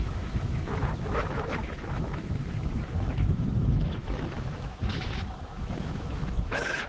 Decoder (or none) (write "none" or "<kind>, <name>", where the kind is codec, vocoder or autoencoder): autoencoder, DAC-VAE